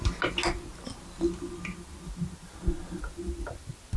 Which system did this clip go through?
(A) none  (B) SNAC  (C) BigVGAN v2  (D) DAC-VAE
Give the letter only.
A